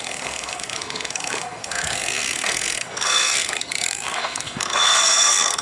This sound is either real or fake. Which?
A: fake